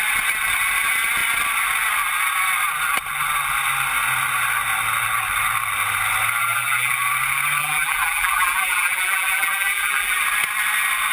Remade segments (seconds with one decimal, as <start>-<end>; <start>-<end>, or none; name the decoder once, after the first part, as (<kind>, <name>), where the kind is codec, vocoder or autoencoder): 6.4-6.9 (vocoder, BigVGAN v2); 7.6-10.2